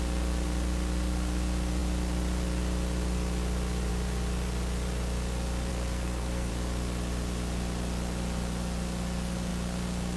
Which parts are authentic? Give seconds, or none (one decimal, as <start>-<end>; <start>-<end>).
0.0-5.7; 6.5-10.2